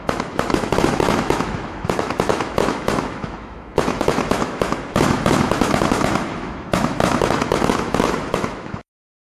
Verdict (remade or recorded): remade